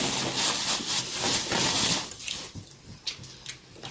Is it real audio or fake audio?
real